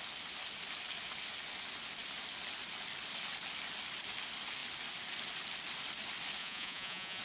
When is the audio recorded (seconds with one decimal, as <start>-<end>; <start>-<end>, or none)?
0.0-6.4